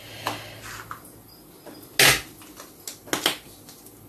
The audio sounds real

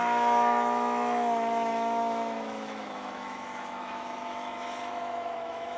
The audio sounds fake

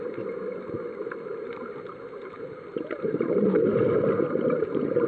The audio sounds real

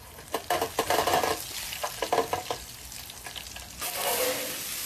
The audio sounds real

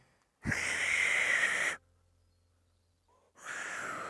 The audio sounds real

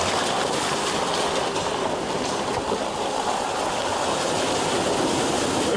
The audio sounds real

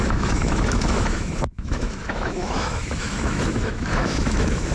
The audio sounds fake